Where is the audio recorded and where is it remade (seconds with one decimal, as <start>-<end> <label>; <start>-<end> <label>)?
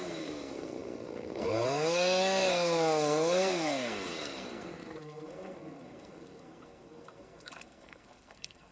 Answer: 0.0-8.7 remade